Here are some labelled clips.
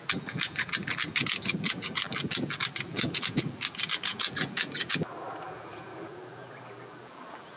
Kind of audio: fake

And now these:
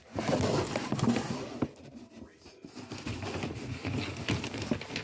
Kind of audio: real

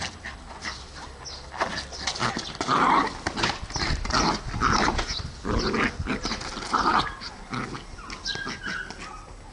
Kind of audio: real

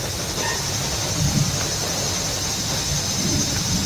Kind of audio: real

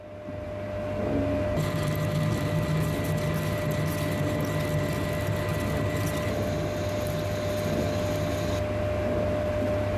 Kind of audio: real